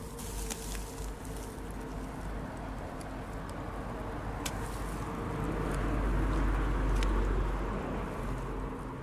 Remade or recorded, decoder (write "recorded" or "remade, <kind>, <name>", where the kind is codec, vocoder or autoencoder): recorded